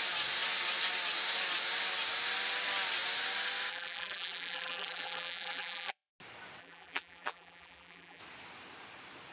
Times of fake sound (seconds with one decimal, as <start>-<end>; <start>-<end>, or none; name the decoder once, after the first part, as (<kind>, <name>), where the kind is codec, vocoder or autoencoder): 3.7-6.1 (vocoder, BigVGAN v2); 6.6-8.2